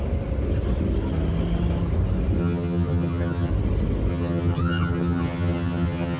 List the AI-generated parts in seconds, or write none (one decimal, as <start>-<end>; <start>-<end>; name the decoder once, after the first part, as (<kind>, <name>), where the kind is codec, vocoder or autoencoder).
2.4-3.5 (vocoder, HiFi-GAN); 4.1-6.2